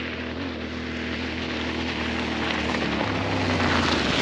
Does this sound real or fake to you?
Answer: real